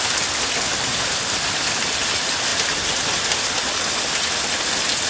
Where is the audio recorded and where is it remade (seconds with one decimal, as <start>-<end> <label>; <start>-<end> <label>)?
0.0-5.1 recorded

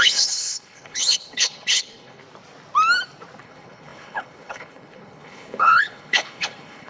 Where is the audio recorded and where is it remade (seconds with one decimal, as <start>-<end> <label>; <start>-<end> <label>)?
0.0-2.2 remade; 2.2-3.4 recorded; 3.4-6.9 remade

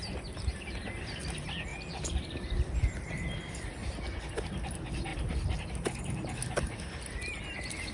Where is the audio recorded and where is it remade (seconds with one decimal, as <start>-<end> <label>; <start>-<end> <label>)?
0.0-7.9 recorded

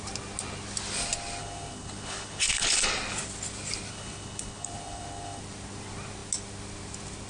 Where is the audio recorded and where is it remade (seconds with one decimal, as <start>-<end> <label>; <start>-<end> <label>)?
0.0-1.4 recorded; 1.4-2.9 remade; 2.9-3.9 recorded; 3.9-5.4 remade; 5.4-7.3 recorded

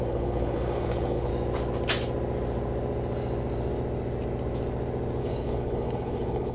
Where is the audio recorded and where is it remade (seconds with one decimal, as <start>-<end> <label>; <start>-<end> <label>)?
0.0-1.3 remade; 1.3-5.2 recorded; 5.2-6.5 remade

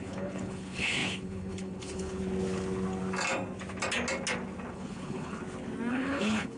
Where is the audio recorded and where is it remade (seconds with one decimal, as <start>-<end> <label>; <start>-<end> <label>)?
0.0-2.2 remade; 2.2-4.7 recorded; 4.7-5.4 remade; 5.4-5.9 recorded; 5.9-6.6 remade

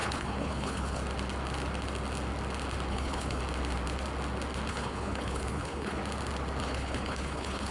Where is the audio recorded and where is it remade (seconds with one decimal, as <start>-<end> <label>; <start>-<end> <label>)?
0.0-1.0 remade; 1.0-2.9 recorded; 2.9-3.4 remade; 3.4-4.7 recorded; 4.7-6.0 remade; 6.0-6.6 recorded; 6.6-7.7 remade

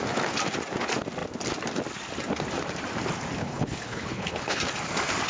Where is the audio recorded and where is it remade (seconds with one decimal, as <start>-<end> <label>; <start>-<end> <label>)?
0.0-3.4 recorded; 3.4-4.6 remade; 4.6-5.3 recorded